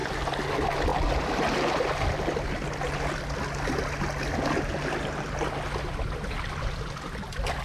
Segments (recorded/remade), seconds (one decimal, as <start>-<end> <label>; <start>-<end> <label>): 0.0-7.6 recorded